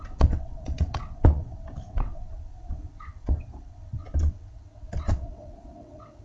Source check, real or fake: fake